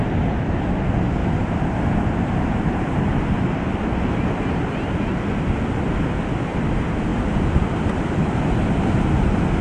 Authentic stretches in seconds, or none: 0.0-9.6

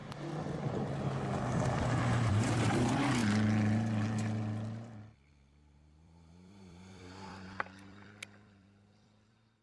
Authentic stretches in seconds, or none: 0.0-2.3; 3.2-5.3

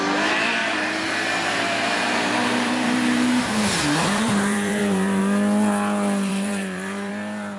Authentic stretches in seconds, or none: 0.0-0.6; 5.2-6.3; 7.1-7.6